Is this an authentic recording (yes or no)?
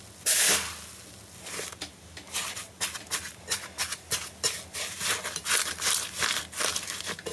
yes